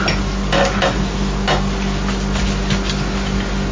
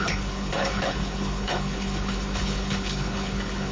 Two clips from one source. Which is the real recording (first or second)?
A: first